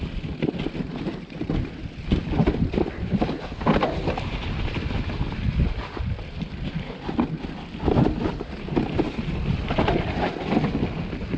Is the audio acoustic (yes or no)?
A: no